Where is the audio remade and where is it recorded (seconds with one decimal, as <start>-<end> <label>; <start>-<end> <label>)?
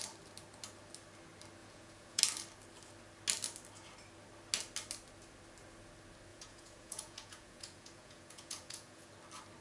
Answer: 0.0-1.6 recorded; 1.6-2.2 remade; 2.2-6.3 recorded; 6.3-9.1 remade; 9.1-9.6 recorded